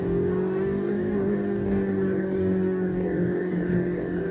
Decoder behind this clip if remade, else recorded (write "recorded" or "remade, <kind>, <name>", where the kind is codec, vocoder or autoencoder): remade, codec, DAC